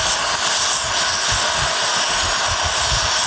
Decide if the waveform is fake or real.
real